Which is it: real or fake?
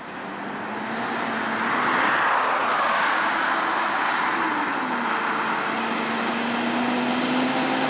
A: real